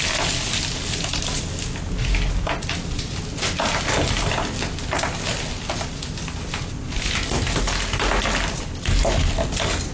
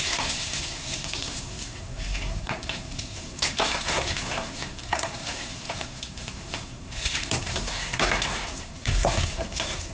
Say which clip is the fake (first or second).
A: second